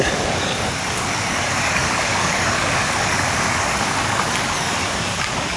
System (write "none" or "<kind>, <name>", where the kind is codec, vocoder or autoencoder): codec, DAC